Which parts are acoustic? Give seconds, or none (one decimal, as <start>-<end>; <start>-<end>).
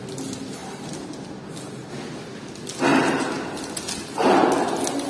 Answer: 0.0-5.1